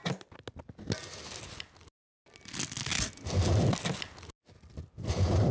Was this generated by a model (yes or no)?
no